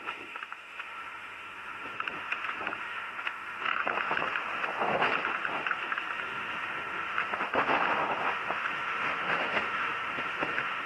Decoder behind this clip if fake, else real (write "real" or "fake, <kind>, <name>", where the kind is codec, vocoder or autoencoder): fake, autoencoder, DAC-VAE